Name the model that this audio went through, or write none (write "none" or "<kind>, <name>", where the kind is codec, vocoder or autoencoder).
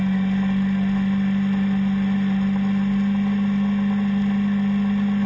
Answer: none